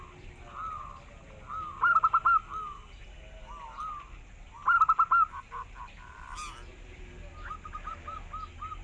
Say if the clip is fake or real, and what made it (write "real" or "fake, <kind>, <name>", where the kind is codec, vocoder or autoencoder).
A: real